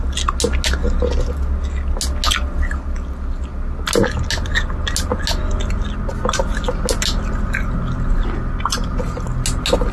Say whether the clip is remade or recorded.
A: recorded